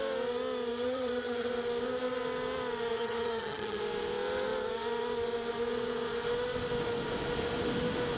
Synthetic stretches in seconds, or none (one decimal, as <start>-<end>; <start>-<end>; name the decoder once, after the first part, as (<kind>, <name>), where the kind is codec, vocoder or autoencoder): 0.7-1.5 (vocoder, HiFi-GAN); 2.9-3.8